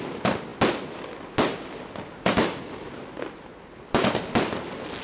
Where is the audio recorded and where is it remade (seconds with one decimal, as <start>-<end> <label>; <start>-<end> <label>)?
0.0-5.0 recorded